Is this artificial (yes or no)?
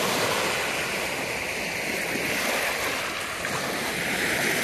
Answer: no